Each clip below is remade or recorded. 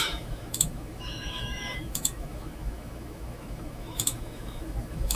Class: remade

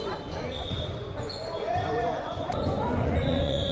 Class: remade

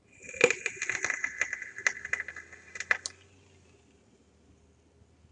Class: recorded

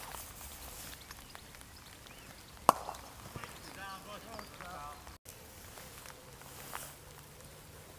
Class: recorded